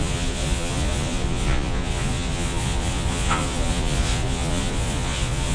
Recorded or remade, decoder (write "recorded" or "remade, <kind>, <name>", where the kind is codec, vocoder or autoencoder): remade, vocoder, Vocos